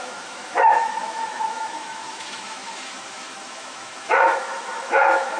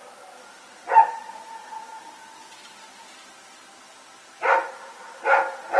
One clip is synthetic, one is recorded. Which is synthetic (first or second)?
first